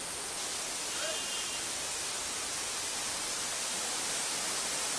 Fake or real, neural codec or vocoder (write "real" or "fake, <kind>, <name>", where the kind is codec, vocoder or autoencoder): real